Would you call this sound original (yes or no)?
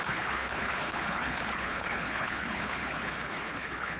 no